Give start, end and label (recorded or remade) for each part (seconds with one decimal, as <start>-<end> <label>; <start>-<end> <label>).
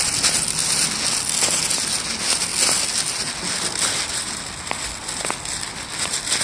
0.0-6.4 recorded